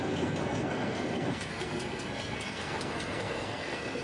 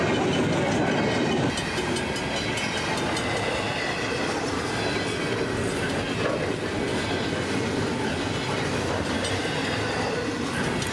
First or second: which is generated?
first